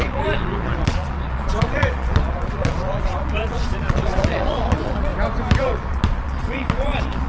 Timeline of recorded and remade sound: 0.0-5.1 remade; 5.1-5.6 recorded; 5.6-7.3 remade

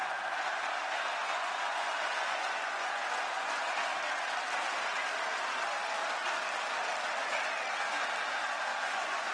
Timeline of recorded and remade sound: 0.0-0.6 remade; 0.6-1.2 recorded; 1.2-3.7 remade; 3.7-8.7 recorded; 8.7-9.3 remade